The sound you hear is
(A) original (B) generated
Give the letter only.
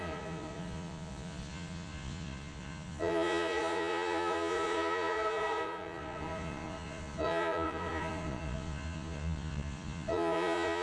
B